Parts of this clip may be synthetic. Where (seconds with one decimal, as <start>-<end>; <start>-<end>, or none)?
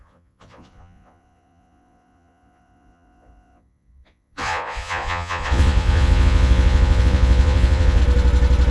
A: 0.0-8.0